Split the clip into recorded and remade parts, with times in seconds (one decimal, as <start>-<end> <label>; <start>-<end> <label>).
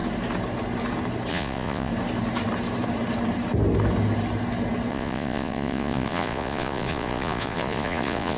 0.0-1.3 recorded; 1.3-1.9 remade; 1.9-4.9 recorded; 4.9-8.4 remade